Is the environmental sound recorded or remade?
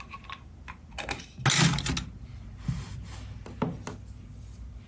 recorded